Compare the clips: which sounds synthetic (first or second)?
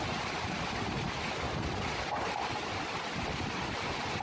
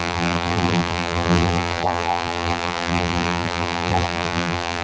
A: second